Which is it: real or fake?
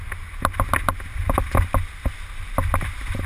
real